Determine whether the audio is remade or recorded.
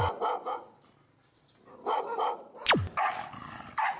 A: recorded